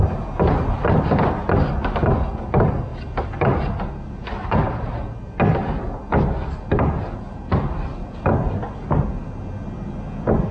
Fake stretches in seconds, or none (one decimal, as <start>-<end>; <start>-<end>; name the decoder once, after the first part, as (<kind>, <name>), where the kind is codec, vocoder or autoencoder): none